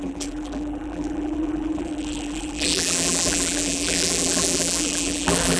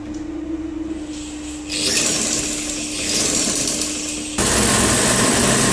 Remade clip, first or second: first